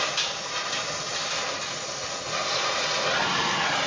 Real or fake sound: real